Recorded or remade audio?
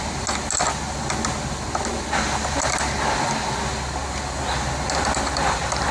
recorded